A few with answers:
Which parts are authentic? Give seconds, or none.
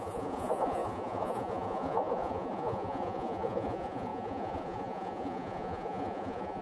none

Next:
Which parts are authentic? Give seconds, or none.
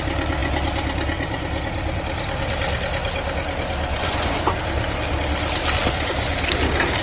0.0-3.9; 4.6-7.0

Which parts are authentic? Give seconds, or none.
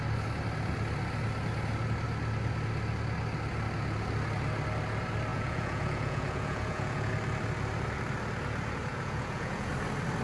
0.0-5.3; 7.1-8.9; 9.7-10.2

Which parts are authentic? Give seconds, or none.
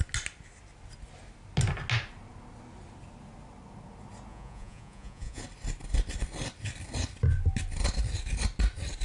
0.0-4.3; 5.4-9.0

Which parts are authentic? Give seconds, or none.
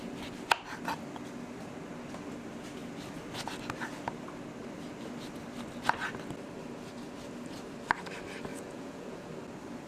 0.0-8.5; 9.3-9.9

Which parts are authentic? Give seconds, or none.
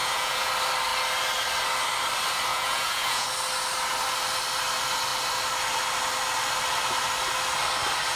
0.5-2.5; 3.3-8.2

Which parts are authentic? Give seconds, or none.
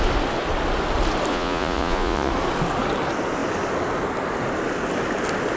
0.0-1.3; 2.3-5.6